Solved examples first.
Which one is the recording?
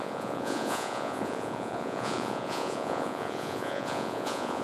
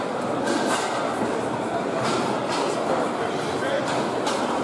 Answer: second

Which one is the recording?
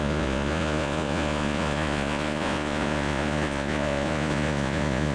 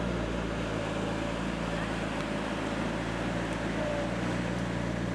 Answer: second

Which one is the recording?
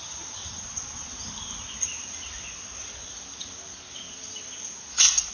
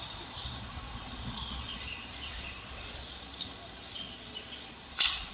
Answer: first